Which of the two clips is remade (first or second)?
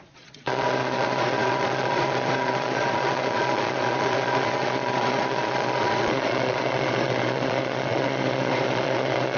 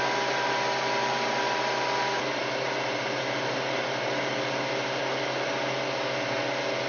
first